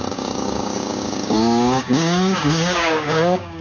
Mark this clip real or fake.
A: fake